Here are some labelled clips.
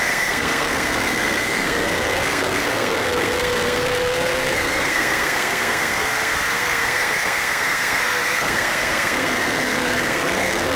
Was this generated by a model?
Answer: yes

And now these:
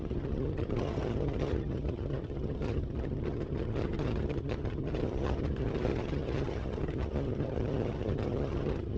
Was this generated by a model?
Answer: yes